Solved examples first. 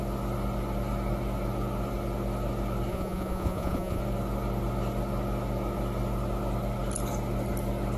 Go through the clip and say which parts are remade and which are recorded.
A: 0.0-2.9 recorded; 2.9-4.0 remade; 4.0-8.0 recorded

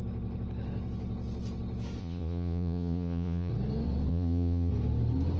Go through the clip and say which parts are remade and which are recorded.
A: 0.0-2.0 recorded; 2.0-3.5 remade; 3.5-4.1 recorded; 4.1-4.7 remade; 4.7-5.4 recorded

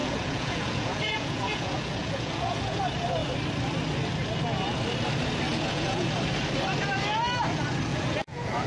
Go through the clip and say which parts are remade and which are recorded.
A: 0.0-2.8 remade; 2.8-5.5 recorded; 5.5-6.1 remade; 6.1-7.9 recorded; 7.9-8.7 remade

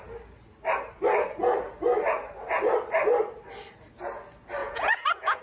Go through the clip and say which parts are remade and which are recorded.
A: 0.0-4.6 recorded; 4.6-5.4 remade

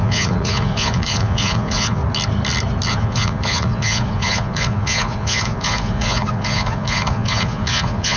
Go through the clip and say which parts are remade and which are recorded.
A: 0.0-2.0 remade; 2.0-2.9 recorded; 2.9-8.2 remade